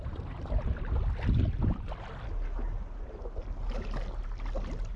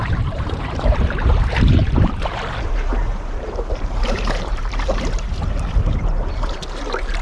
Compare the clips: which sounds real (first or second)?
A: first